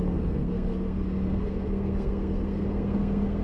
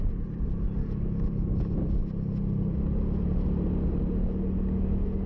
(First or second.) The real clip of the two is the second